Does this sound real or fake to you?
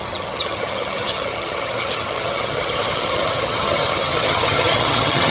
fake